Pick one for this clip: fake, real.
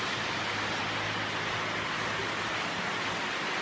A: real